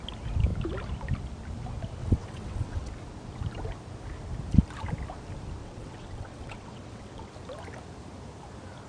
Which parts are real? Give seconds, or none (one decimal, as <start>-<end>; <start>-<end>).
0.0-2.0; 2.9-5.6; 7.3-8.9